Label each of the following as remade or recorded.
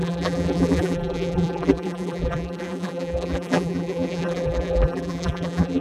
remade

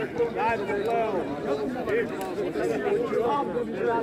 recorded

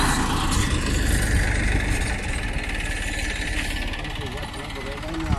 recorded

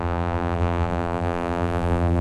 remade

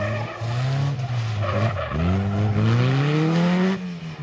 recorded